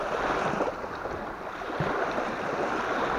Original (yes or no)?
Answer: yes